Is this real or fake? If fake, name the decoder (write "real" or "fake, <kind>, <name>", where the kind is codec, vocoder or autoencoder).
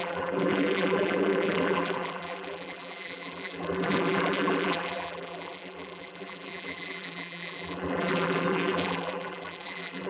fake, vocoder, BigVGAN v2